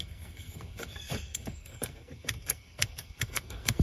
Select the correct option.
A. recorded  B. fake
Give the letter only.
B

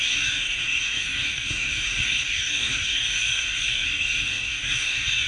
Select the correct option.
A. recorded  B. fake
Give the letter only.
B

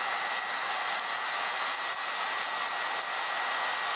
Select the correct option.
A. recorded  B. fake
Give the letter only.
A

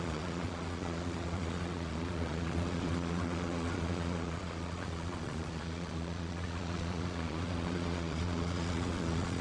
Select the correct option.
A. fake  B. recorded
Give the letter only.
A